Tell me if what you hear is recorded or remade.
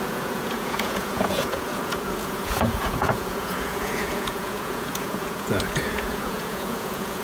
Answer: remade